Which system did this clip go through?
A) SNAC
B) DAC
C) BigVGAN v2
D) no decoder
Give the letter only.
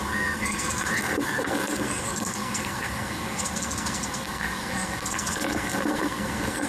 A